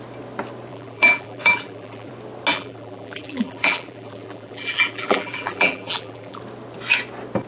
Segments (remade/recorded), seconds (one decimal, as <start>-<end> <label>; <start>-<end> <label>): 0.0-0.7 recorded; 0.7-2.1 remade; 2.1-2.5 recorded; 2.5-6.4 remade; 6.4-7.5 recorded